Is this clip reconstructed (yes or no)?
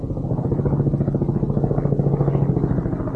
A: no